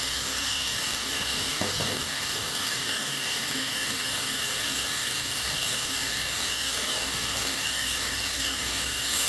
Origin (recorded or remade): remade